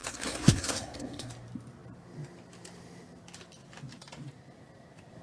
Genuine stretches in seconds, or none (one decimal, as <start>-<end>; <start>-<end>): 1.3-5.2